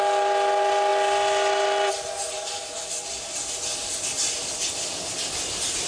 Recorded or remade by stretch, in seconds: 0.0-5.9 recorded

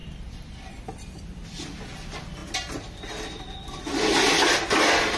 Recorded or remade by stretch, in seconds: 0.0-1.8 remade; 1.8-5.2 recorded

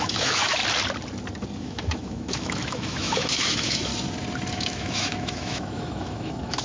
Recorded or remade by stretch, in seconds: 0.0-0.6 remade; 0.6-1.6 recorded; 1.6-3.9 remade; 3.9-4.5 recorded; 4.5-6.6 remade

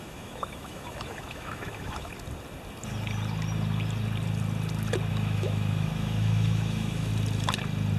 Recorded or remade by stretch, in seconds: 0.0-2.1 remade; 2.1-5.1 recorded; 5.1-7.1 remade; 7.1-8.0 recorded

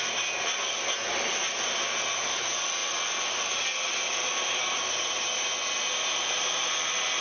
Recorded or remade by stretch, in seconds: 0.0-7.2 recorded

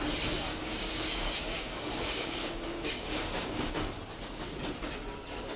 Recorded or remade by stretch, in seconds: 0.0-0.5 recorded; 0.5-3.7 remade; 3.7-5.6 recorded

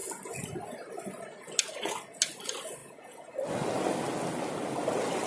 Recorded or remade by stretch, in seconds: 0.0-2.8 recorded; 2.8-3.3 remade; 3.3-5.3 recorded